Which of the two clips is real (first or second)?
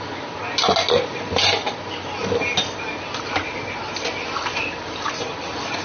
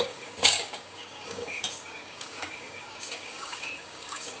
first